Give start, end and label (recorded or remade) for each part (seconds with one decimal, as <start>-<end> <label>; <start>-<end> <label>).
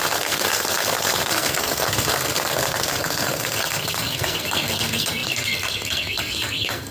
0.0-6.9 remade